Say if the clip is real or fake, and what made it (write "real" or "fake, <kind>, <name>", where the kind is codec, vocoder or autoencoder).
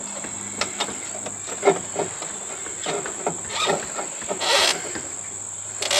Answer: real